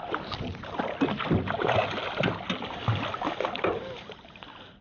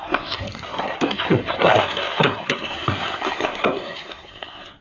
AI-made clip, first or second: second